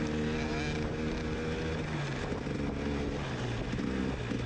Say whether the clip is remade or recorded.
recorded